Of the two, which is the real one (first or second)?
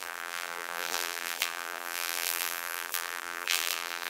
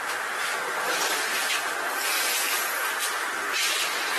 second